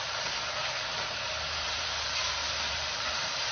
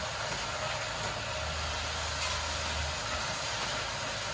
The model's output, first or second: first